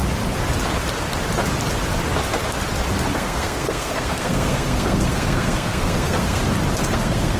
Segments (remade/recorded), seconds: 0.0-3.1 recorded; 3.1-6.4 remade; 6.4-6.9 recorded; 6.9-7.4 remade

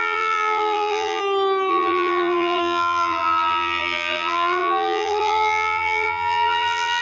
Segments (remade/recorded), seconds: 0.0-1.2 remade; 1.2-1.7 recorded; 1.7-7.0 remade

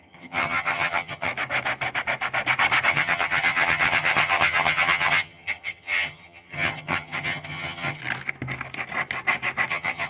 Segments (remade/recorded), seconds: 0.0-1.3 remade; 1.3-2.9 recorded; 2.9-8.0 remade; 8.0-9.7 recorded; 9.7-10.1 remade

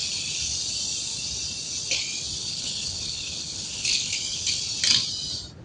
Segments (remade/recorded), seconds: 0.0-2.4 recorded; 2.4-4.5 remade; 4.5-5.6 recorded

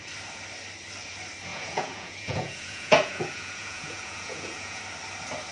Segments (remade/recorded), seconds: 0.0-1.5 recorded; 1.5-4.8 remade; 4.8-5.5 recorded

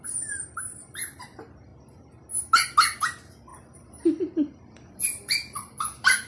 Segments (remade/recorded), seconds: 0.0-1.7 remade; 1.7-3.0 recorded; 3.0-6.3 remade

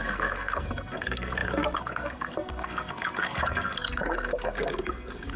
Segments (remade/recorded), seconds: 0.0-5.4 remade

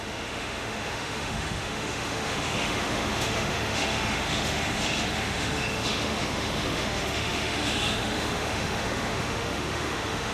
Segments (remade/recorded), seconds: 0.0-10.3 remade